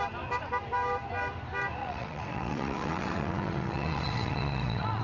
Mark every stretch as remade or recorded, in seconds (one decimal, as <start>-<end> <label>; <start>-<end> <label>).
0.0-1.8 recorded; 1.8-5.0 remade